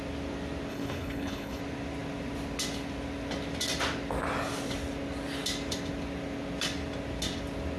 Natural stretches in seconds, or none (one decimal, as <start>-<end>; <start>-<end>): 0.0-0.7; 1.6-7.8